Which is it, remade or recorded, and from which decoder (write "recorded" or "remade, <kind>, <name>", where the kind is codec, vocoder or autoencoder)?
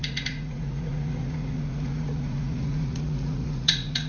remade, vocoder, Vocos